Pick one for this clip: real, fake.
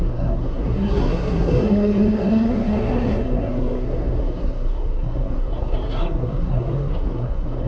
fake